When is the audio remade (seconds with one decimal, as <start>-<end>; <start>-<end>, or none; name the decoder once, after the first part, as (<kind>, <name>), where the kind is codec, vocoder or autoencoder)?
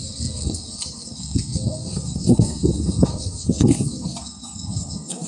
0.0-5.3 (codec, SNAC)